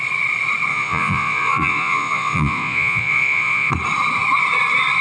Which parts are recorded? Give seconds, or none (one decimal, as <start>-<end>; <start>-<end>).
0.0-0.7; 3.7-5.0